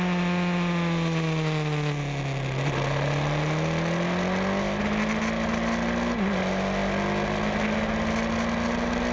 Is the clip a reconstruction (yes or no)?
no